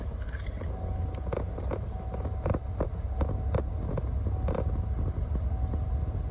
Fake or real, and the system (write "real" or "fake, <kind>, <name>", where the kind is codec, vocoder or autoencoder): real